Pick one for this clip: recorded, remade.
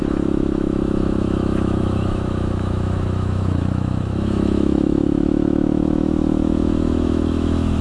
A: remade